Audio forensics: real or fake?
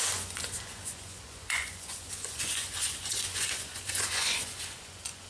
fake